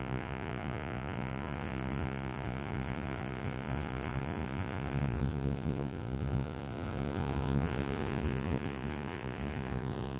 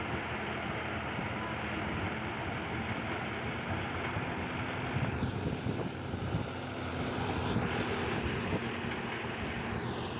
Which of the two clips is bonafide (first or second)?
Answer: second